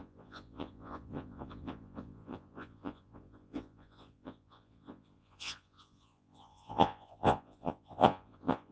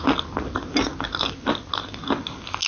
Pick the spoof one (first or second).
first